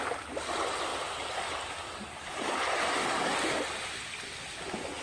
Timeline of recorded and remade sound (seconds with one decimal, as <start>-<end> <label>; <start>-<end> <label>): 0.0-5.0 recorded